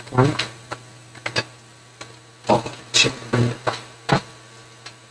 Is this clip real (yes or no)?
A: yes